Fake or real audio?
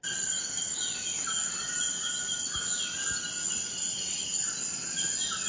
real